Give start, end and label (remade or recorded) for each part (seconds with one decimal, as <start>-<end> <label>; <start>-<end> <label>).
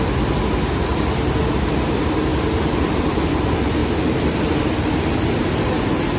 0.0-6.2 recorded